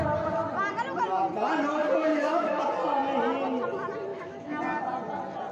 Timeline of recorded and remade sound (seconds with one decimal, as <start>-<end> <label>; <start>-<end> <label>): 0.0-2.1 recorded; 2.1-2.6 remade; 2.6-4.1 recorded; 4.1-4.6 remade; 4.6-5.5 recorded